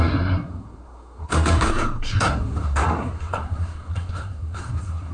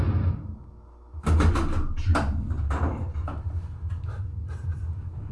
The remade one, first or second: first